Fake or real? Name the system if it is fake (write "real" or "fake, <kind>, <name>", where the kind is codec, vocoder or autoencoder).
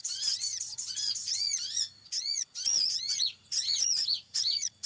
fake, vocoder, Vocos